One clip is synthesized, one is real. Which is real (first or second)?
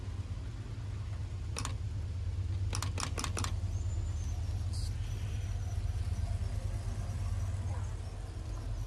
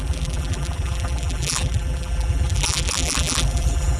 first